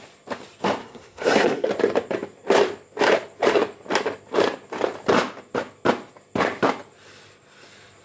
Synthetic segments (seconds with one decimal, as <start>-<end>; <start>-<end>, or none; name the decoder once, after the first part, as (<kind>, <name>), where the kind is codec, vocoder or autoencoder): 0.8-1.7 (codec, SNAC)